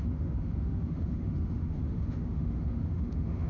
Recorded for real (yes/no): no